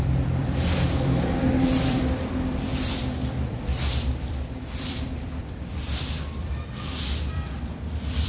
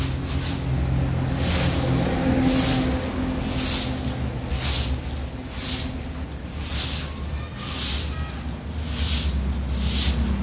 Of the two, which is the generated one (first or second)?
first